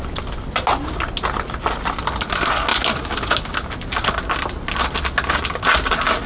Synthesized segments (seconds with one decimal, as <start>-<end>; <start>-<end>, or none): none